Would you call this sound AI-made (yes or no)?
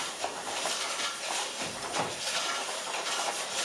yes